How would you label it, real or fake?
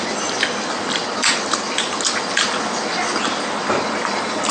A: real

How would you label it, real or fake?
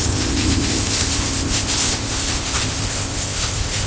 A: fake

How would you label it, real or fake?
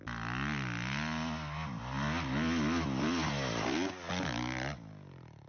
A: real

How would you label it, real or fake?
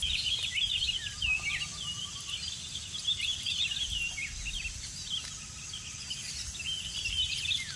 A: real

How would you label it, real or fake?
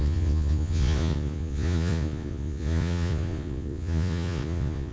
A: fake